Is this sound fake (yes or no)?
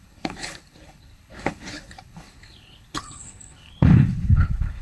yes